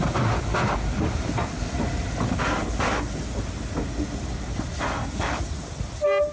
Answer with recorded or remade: recorded